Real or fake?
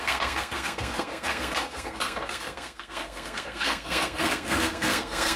fake